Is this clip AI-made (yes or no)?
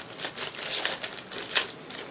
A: no